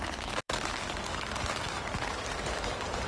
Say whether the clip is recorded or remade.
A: remade